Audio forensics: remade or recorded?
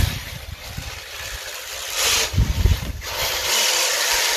recorded